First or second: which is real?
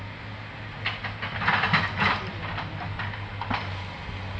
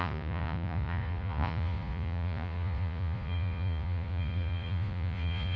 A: first